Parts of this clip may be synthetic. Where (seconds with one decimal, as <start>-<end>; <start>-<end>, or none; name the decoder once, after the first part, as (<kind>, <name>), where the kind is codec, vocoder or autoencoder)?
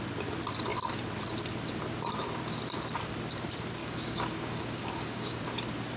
3.8-5.4 (codec, DAC)